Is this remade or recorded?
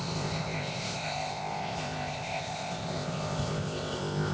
remade